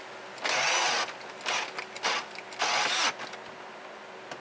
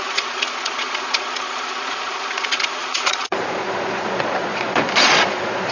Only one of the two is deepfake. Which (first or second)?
second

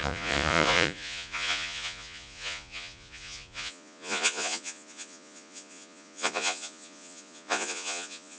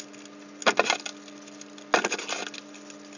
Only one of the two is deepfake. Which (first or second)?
first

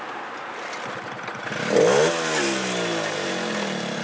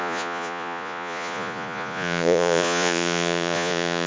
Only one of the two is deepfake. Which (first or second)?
second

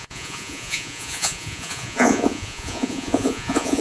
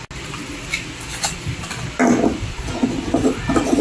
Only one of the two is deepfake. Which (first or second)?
first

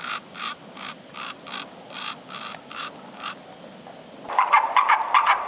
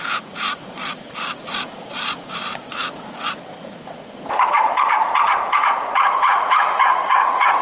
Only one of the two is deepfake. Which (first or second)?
second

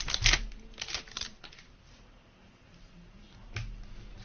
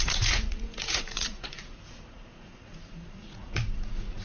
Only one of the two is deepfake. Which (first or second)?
second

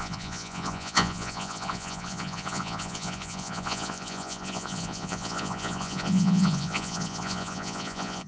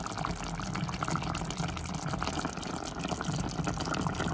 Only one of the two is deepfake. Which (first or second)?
first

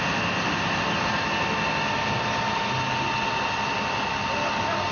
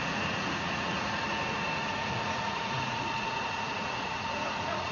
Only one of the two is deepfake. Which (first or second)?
second